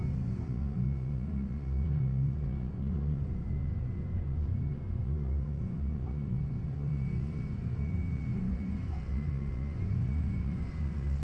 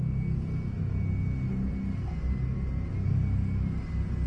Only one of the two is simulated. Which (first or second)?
first